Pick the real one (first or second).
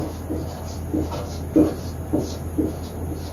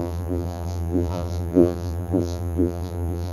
first